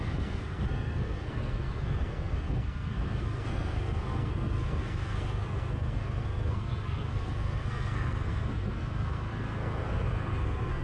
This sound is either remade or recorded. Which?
remade